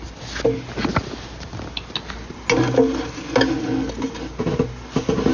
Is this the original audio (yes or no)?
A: yes